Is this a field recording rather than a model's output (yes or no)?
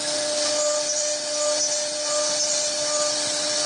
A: yes